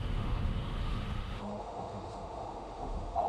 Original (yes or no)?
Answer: no